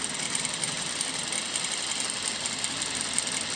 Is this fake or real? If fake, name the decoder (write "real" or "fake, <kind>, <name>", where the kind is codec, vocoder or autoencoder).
real